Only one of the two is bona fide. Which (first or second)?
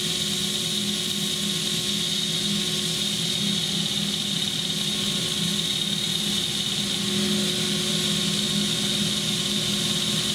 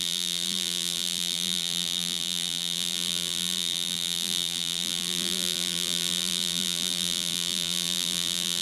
first